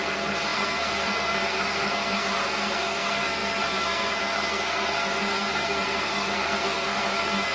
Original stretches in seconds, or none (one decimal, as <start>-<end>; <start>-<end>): none